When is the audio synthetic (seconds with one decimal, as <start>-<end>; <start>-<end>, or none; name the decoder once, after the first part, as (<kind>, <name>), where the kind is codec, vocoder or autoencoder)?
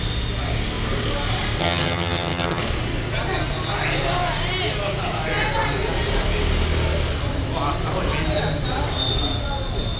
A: 1.6-2.6 (vocoder, HiFi-GAN)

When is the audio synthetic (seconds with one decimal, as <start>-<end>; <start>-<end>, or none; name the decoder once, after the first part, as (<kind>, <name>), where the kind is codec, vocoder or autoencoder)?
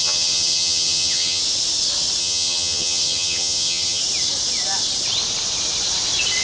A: 0.0-1.4 (vocoder, HiFi-GAN); 2.2-4.0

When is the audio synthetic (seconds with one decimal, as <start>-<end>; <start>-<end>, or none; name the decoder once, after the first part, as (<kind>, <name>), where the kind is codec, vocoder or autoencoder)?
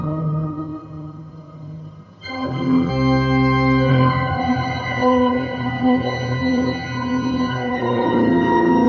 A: 0.0-2.9 (vocoder, HiFi-GAN); 3.9-8.9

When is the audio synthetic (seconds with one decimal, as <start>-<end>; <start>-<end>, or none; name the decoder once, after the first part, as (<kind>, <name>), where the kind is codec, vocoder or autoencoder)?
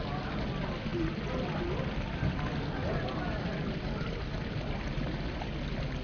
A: none